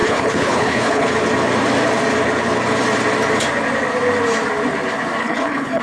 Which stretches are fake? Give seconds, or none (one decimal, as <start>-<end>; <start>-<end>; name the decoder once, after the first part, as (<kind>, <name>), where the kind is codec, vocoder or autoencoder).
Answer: 0.0-1.1 (codec, HILCodec); 5.2-5.8